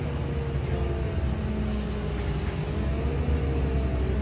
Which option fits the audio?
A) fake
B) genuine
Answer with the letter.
B